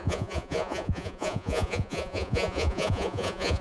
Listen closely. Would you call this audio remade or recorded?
remade